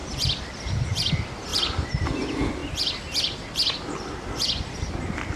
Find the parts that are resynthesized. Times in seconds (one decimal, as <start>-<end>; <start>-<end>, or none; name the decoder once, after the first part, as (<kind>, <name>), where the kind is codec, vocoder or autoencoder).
1.5-2.1 (vocoder, BigVGAN v2)

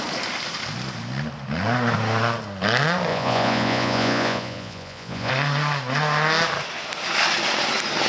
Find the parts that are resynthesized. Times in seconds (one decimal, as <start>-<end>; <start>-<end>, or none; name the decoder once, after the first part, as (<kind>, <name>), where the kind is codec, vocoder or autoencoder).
3.1-5.3 (vocoder, Vocos)